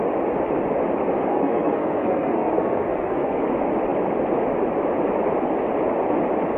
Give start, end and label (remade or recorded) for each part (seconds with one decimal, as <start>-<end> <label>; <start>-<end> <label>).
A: 0.0-1.3 recorded; 1.3-3.4 remade; 3.4-6.6 recorded